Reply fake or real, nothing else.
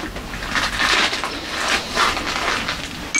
real